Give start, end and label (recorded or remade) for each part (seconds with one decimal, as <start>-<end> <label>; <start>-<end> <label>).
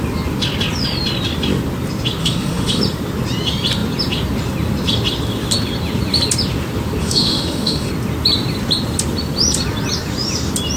0.0-2.2 recorded; 2.2-2.8 remade; 2.8-7.0 recorded; 7.0-7.9 remade; 7.9-10.8 recorded